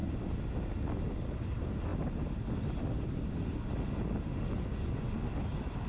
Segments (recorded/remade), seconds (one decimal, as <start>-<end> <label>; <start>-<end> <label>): 0.0-4.7 recorded; 4.7-5.2 remade; 5.2-5.9 recorded